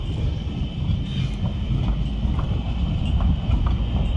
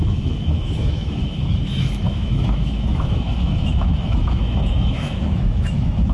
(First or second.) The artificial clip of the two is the second